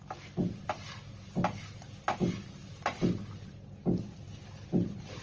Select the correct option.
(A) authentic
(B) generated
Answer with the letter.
A